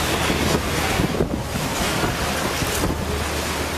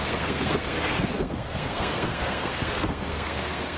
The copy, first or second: second